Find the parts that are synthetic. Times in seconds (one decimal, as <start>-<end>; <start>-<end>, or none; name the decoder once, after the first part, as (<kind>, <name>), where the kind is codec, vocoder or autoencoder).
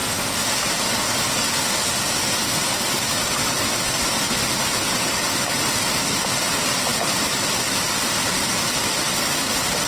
6.9-8.4 (vocoder, BigVGAN v2)